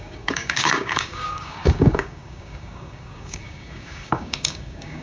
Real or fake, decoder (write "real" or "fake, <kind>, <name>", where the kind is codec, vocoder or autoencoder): fake, codec, DAC